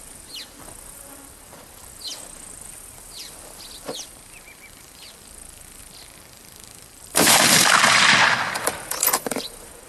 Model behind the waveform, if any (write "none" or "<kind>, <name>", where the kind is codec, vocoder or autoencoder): vocoder, BigVGAN v2